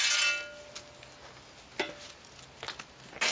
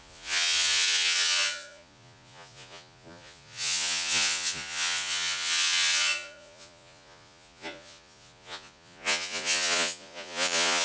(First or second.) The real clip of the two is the first